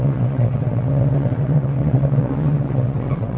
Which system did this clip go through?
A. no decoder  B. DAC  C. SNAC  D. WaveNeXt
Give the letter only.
D